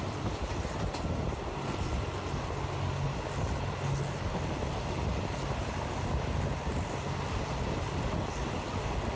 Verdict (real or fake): real